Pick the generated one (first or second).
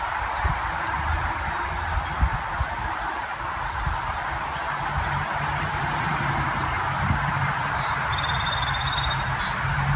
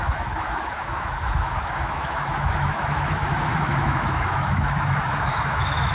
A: second